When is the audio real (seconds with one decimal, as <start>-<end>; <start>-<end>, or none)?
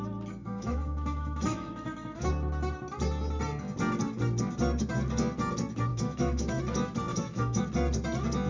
0.0-0.4; 2.3-5.9; 6.6-7.1; 7.6-8.5